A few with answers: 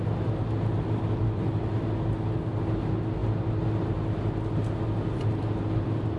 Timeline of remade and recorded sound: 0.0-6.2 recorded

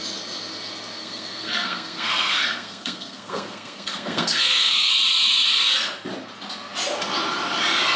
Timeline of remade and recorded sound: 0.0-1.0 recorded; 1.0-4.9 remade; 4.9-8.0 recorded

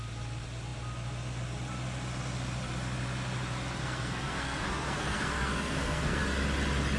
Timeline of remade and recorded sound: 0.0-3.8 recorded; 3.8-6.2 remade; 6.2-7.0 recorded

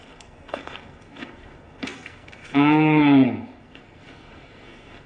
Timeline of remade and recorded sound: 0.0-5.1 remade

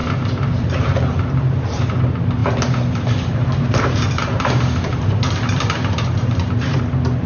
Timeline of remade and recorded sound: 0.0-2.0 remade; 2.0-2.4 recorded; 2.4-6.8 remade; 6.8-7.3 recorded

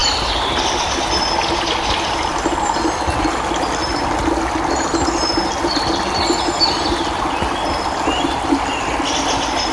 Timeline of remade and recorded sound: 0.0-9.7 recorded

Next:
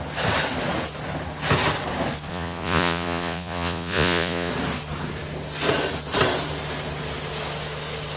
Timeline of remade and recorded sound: 0.0-2.3 recorded; 2.3-4.5 remade; 4.5-8.2 recorded

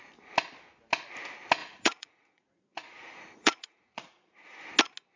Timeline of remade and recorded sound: 0.0-1.6 recorded; 1.6-4.7 remade; 4.7-5.2 recorded